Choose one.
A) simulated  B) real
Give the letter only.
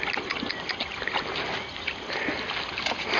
B